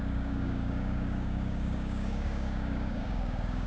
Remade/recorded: remade